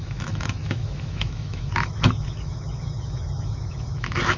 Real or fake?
fake